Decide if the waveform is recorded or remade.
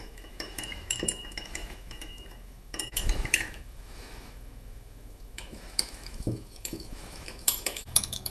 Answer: remade